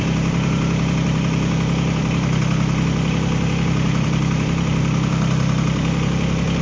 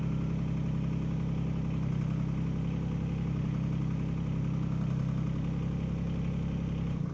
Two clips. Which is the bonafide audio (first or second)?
second